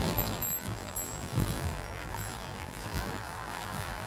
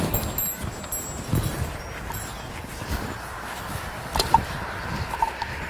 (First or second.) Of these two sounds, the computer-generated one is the first